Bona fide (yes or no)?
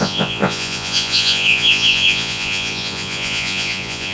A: no